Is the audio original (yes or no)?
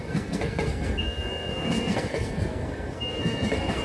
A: no